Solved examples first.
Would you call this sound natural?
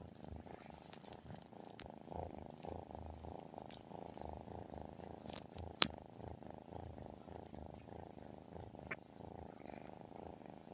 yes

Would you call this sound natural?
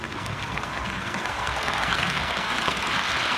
no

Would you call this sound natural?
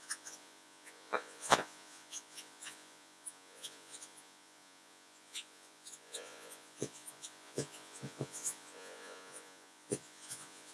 no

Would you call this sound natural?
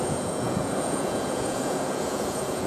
no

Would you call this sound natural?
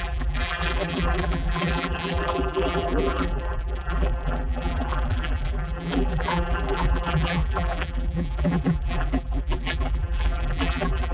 no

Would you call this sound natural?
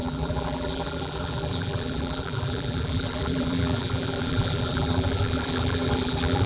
no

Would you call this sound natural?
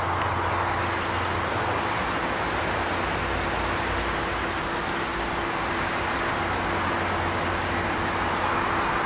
yes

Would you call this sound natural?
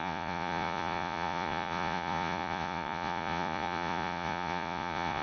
no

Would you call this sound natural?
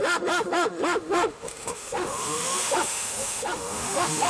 no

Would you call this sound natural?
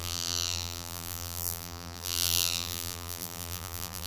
no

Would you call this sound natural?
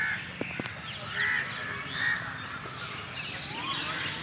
yes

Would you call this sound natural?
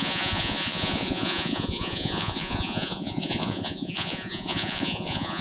no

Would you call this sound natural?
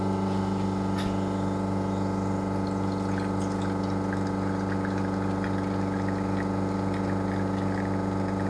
yes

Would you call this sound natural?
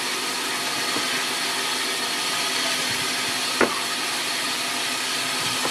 yes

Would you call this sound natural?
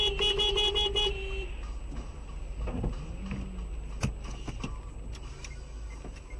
yes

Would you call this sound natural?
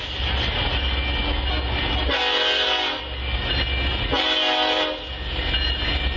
yes